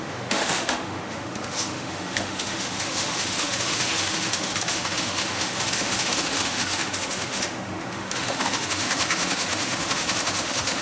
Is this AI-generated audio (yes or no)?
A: yes